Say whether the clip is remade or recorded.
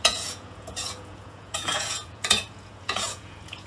remade